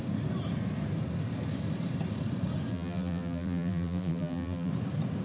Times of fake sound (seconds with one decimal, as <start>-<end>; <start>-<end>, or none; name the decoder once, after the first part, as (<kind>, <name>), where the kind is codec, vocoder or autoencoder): 2.7-4.7 (vocoder, BigVGAN v2)